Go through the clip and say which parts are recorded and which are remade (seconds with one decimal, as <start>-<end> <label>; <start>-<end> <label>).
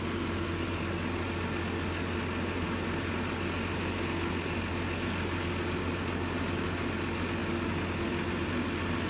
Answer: 0.0-9.1 recorded